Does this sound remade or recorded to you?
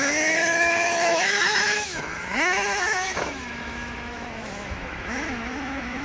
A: remade